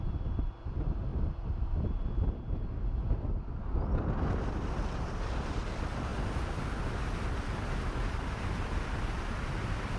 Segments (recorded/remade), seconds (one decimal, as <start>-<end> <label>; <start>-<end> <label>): 0.0-6.1 remade; 6.1-7.4 recorded; 7.4-10.0 remade